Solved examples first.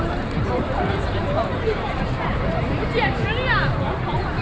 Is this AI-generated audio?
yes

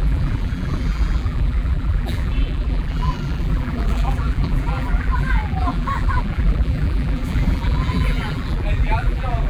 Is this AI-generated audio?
yes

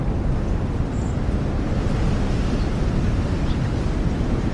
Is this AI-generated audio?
no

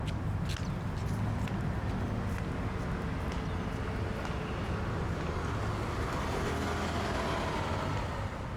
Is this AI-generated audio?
no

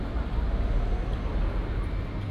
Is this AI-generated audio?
no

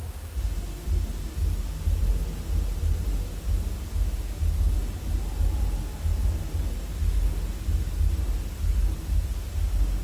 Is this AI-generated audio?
no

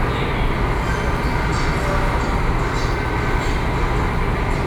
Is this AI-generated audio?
no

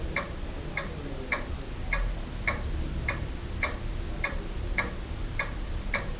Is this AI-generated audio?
no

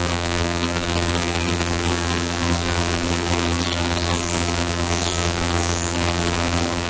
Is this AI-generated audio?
yes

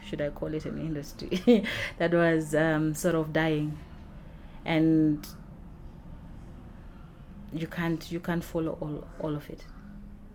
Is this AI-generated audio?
no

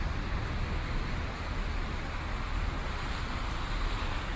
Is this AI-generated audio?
no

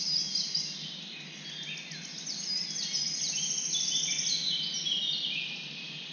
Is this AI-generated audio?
no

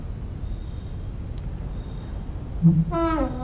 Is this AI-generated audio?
no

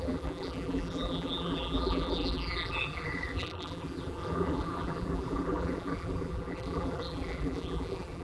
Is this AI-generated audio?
yes